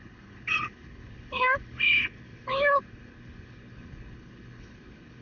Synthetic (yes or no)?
yes